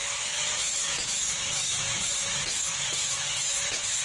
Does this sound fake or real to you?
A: fake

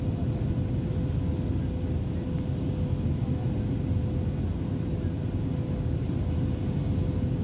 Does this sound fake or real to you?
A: real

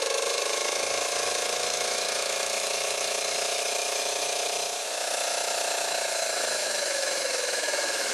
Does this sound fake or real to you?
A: fake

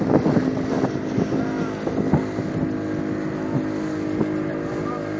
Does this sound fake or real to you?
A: real